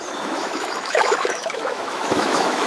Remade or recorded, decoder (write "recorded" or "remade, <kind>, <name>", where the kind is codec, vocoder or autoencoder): remade, autoencoder, DAC-VAE